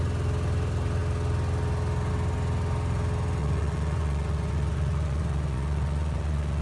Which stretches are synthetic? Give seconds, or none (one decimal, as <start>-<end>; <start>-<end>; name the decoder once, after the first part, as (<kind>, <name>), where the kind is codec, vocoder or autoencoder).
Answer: 3.4-6.6 (vocoder, Vocos)